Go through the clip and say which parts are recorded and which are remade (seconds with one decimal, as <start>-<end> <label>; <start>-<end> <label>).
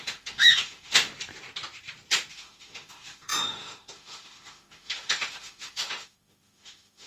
0.0-1.1 remade; 1.1-2.3 recorded; 2.3-7.1 remade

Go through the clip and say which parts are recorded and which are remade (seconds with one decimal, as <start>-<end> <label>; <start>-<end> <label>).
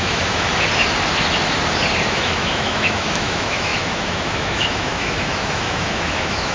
0.0-0.5 remade; 0.5-2.1 recorded; 2.1-6.5 remade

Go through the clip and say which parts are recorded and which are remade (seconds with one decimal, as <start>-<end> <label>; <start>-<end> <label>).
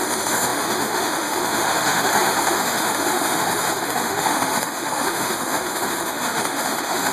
0.0-7.1 remade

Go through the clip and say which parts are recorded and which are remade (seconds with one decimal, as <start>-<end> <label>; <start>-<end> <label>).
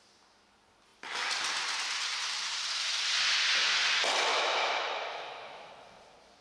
0.0-4.3 recorded; 4.3-5.7 remade; 5.7-6.4 recorded